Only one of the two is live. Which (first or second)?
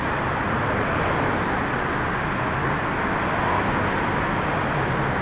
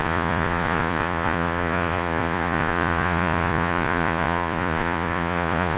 first